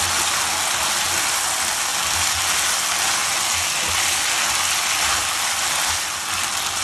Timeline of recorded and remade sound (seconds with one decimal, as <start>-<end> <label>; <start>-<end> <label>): 0.0-6.8 recorded